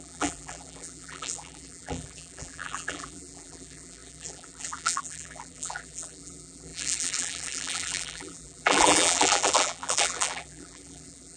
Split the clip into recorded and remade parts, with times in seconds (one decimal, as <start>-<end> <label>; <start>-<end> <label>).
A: 0.0-11.4 remade